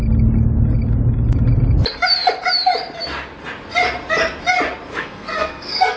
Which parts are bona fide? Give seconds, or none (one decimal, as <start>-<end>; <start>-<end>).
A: 0.0-4.9